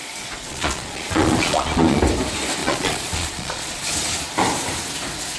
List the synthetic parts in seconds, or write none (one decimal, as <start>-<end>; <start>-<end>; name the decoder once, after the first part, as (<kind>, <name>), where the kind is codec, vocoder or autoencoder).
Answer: 0.0-2.0 (vocoder, Vocos); 2.6-3.9